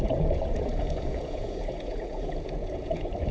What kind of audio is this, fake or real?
fake